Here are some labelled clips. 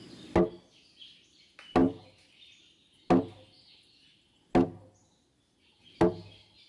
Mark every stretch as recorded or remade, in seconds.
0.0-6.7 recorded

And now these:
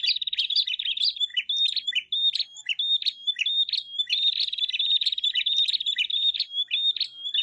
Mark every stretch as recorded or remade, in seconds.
0.0-7.4 recorded

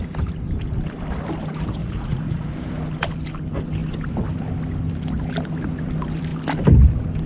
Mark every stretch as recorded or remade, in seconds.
0.0-1.8 recorded; 1.8-2.5 remade; 2.5-7.3 recorded